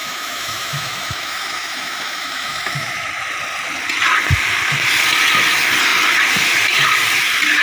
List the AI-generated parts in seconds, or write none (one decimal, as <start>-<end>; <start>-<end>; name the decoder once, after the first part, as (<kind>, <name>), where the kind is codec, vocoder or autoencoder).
0.0-3.1 (autoencoder, DAC-VAE)